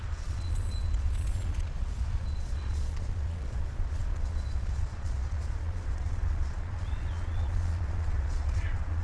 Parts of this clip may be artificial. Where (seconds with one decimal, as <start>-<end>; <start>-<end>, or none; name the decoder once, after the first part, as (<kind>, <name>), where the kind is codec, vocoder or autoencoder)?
0.0-9.0 (vocoder, Vocos)